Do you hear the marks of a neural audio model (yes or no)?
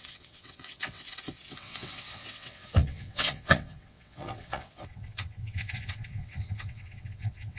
yes